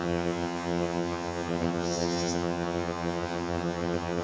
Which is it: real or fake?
fake